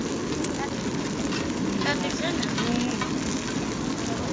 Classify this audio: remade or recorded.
recorded